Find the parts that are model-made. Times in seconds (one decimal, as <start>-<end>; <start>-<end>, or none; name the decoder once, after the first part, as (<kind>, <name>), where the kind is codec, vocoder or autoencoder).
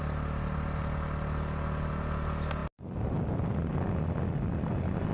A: none